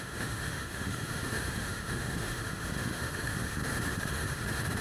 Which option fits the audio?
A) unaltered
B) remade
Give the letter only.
B